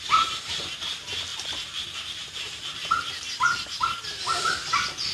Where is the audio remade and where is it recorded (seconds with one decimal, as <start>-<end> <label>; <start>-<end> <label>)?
0.0-5.1 recorded